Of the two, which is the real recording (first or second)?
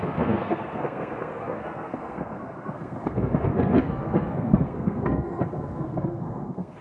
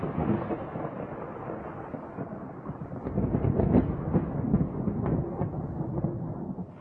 second